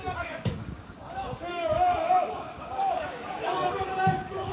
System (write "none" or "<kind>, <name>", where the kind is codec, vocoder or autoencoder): codec, DAC